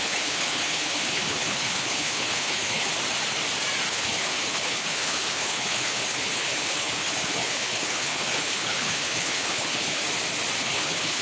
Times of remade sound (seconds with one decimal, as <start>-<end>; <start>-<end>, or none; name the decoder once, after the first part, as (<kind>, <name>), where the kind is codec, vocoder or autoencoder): 0.0-2.9 (codec, HILCodec); 3.9-10.0; 10.6-11.2